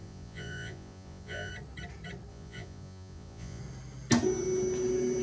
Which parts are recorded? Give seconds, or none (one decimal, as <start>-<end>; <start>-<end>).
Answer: 1.5-2.3; 3.6-5.2

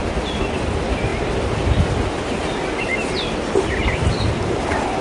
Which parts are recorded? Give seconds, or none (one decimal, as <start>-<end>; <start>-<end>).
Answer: 0.0-5.0

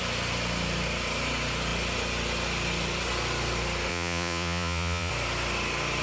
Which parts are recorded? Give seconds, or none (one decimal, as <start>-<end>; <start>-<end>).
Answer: 0.0-3.9; 5.1-6.0

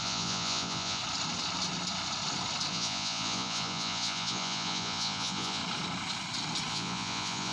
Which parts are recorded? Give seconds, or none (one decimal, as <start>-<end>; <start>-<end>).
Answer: 1.0-2.7; 5.6-6.7

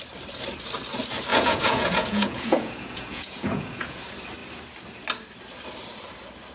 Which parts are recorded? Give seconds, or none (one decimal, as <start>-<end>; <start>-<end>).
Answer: 0.0-1.3; 4.0-6.5